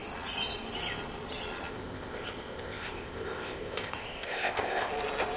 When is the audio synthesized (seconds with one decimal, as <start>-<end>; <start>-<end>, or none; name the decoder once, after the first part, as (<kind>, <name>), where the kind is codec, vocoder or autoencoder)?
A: 1.7-4.9 (codec, ZipCodec)